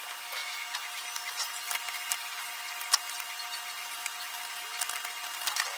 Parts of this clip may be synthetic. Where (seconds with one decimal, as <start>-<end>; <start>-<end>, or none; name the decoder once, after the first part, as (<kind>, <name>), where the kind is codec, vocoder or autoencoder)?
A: 3.8-4.4 (vocoder, BigVGAN v2)